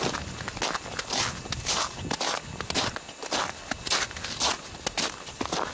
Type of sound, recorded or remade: recorded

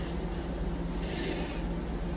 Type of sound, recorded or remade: recorded